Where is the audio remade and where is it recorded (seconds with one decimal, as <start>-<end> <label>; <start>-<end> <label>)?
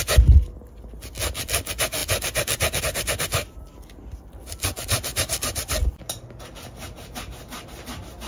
0.0-8.3 recorded